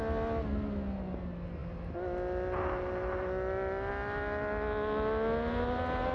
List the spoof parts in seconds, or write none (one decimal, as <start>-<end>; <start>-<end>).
none